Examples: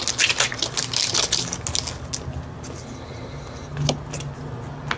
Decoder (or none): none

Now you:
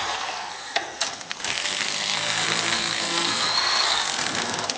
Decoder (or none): codec, SNAC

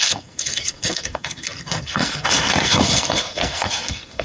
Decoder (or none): codec, SNAC